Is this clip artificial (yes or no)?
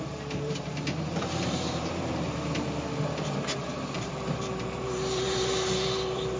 yes